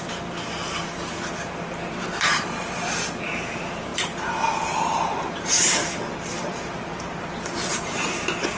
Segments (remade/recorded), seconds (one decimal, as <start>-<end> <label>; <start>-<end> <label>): 0.0-8.6 remade